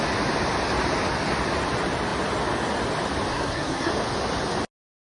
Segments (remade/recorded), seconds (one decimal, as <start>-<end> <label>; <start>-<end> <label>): 0.0-3.3 recorded; 3.3-3.9 remade; 3.9-5.1 recorded